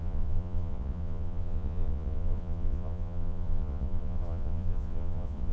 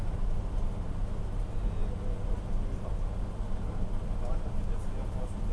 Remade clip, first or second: first